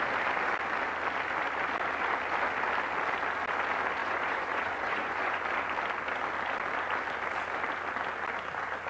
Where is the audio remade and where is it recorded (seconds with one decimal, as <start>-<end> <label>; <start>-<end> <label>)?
0.0-4.0 recorded; 4.0-5.4 remade; 5.4-8.9 recorded